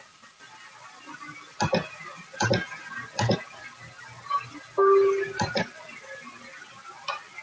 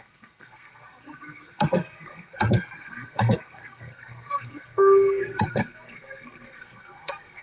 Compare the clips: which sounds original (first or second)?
first